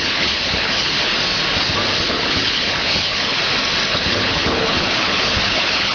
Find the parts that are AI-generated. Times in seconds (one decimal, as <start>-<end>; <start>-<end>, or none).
0.0-1.1; 2.1-3.4; 3.9-5.9